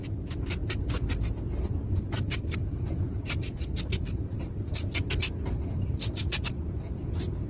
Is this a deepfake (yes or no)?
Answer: no